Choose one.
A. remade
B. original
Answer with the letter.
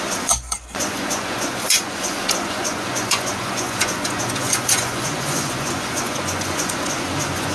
A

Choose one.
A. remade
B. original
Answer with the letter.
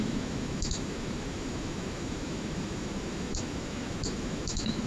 A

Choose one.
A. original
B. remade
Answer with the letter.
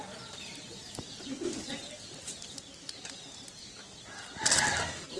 A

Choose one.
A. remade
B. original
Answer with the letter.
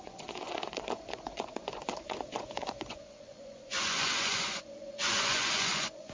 A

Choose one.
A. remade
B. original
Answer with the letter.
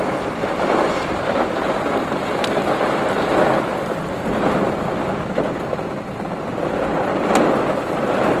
B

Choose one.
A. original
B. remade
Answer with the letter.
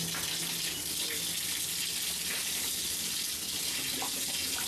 A